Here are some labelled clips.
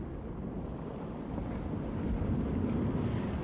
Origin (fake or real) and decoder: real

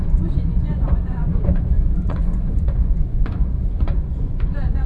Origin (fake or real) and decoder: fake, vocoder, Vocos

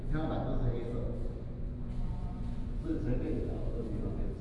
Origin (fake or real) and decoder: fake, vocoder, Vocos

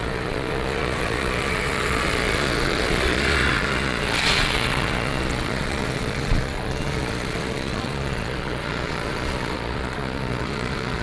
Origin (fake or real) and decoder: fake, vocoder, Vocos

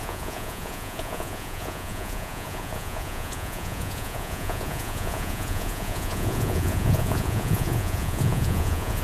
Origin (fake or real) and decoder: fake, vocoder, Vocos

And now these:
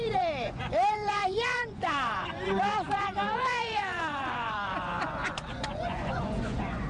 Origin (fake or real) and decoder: fake, vocoder, Vocos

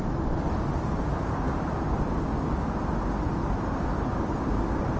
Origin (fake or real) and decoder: real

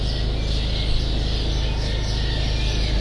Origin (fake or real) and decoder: real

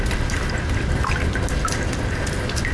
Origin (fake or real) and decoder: real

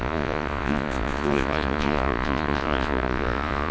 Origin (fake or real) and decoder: fake, vocoder, Vocos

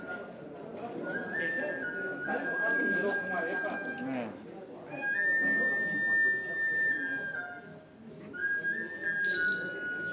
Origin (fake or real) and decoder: real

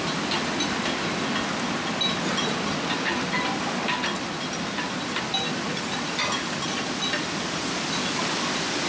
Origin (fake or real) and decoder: real